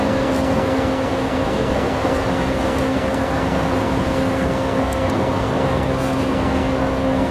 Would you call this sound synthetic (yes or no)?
yes